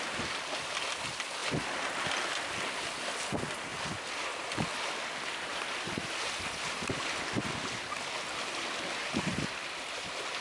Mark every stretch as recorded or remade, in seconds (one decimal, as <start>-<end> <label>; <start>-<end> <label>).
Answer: 0.0-10.4 recorded